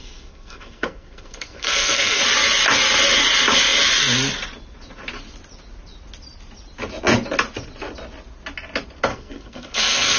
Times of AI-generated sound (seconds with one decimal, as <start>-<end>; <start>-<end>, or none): 0.0-2.2; 9.1-10.2